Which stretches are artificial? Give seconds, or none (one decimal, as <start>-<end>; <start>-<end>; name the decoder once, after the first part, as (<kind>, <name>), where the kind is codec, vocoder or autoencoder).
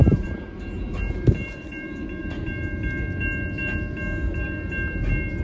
0.0-2.6 (vocoder, BigVGAN v2)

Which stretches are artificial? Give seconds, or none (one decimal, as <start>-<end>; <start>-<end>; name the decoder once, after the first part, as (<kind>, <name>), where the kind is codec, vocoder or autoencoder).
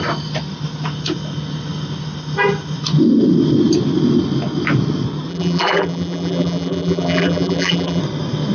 5.3-8.0 (vocoder, BigVGAN v2)